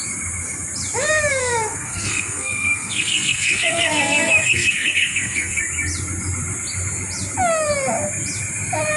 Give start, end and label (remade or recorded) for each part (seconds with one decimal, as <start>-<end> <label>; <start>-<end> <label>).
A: 0.0-1.3 recorded; 1.3-5.6 remade; 5.6-9.0 recorded

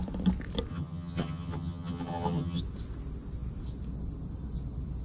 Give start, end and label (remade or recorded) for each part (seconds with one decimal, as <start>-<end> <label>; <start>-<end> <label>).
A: 0.0-0.7 recorded; 0.7-2.6 remade; 2.6-5.0 recorded